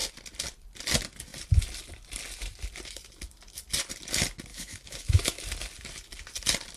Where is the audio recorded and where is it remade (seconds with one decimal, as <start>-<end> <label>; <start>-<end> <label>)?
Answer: 0.0-4.5 recorded; 4.5-5.4 remade; 5.4-6.8 recorded